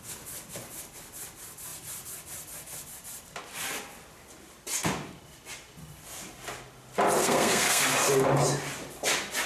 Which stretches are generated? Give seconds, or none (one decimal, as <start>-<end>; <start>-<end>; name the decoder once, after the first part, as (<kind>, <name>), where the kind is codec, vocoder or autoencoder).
7.2-7.8 (codec, SNAC)